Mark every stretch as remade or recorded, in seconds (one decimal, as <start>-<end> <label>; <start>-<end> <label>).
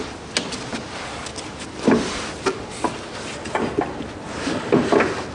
0.0-5.3 recorded